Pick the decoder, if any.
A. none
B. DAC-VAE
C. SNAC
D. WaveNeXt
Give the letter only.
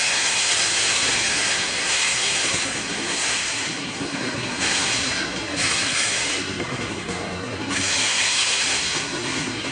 C